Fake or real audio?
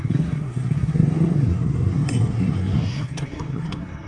fake